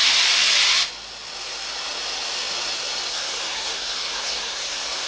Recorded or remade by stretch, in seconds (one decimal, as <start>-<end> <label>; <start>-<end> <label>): 0.0-3.1 recorded; 3.1-5.1 remade

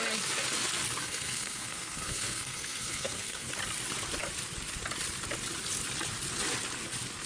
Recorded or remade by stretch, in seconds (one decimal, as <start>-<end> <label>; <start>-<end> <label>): 0.0-1.0 recorded; 1.0-3.5 remade; 3.5-7.3 recorded